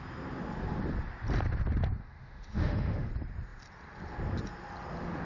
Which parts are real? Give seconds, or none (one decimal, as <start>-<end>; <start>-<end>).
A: 0.0-2.0; 3.1-5.2